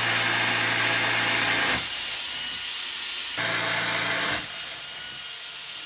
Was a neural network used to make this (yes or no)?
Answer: no